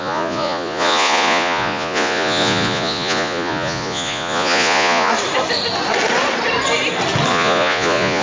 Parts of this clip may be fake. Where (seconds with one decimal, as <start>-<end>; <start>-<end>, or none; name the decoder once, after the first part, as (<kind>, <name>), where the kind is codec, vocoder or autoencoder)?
0.0-5.1 (vocoder, Vocos); 7.3-8.2

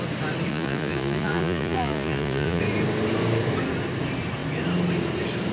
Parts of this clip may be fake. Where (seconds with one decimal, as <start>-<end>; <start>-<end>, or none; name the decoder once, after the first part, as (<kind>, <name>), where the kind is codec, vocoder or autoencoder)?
0.5-2.6 (vocoder, Vocos)